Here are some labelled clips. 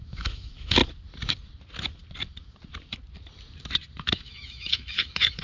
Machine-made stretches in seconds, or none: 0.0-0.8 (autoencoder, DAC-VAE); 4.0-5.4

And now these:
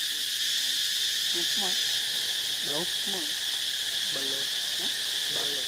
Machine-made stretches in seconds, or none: none

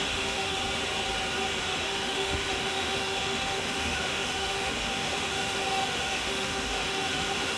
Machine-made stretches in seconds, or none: 0.0-0.6 (autoencoder, DAC-VAE); 1.6-7.6

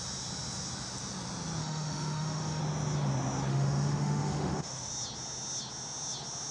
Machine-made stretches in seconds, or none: 1.6-2.6 (autoencoder, DAC-VAE); 3.5-4.9